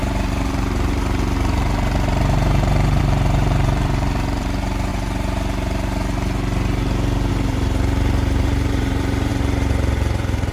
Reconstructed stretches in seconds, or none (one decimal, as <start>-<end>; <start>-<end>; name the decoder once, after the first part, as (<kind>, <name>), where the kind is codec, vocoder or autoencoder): 0.0-4.9 (vocoder, BigVGAN v2); 7.3-9.3